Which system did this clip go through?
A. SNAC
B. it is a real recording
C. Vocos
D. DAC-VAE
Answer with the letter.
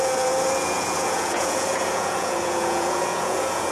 C